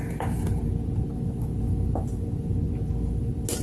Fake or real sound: real